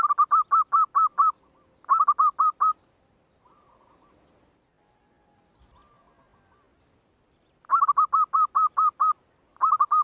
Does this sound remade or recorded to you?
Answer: recorded